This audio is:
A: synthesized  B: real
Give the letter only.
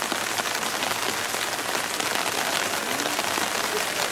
B